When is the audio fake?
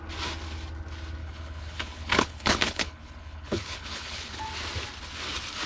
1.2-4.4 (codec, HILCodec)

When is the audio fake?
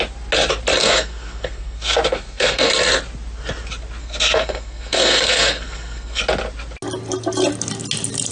0.8-2.7 (codec, SNAC); 4.0-6.2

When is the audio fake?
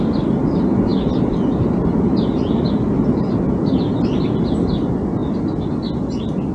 none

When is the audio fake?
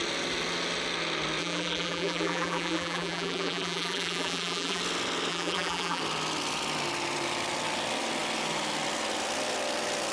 1.4-4.8 (vocoder, BigVGAN v2); 5.3-6.0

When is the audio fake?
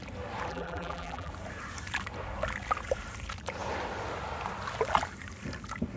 0.5-1.3 (vocoder, BigVGAN v2)